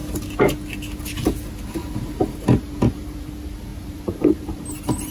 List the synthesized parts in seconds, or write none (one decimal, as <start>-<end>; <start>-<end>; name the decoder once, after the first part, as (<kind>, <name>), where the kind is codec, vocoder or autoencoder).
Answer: 1.8-3.3 (vocoder, BigVGAN v2); 3.7-5.1